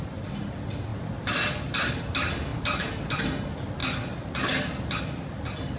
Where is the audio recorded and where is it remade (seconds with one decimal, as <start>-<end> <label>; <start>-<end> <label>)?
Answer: 0.0-5.8 recorded